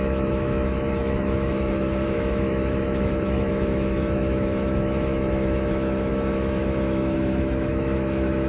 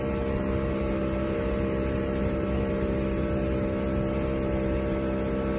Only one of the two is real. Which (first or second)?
second